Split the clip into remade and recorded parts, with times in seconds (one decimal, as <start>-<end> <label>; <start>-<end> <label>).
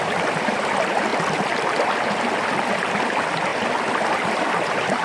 0.0-1.1 remade; 1.1-2.5 recorded; 2.5-5.0 remade